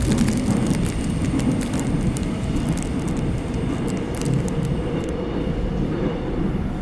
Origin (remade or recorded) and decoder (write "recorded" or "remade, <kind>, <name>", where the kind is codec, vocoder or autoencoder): recorded